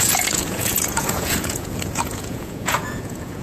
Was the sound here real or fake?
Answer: fake